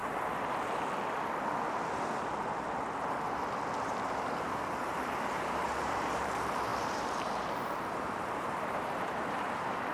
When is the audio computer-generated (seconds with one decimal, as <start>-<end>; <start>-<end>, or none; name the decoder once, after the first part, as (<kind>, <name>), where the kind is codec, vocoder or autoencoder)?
3.8-9.9 (vocoder, BigVGAN v2)